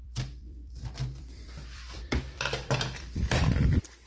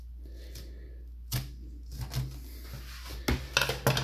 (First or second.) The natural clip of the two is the second